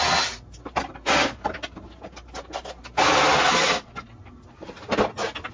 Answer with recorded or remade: recorded